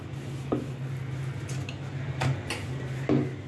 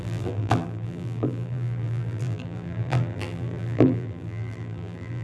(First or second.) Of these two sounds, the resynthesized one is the second